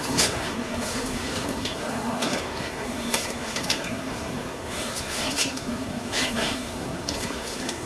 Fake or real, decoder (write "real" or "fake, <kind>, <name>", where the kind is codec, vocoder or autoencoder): fake, codec, SNAC